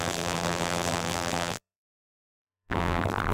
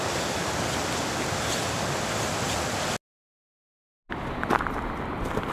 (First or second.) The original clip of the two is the second